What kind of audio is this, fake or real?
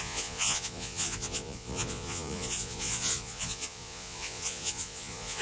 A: fake